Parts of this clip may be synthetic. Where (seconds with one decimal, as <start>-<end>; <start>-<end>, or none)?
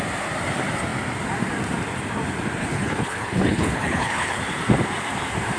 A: 2.6-4.4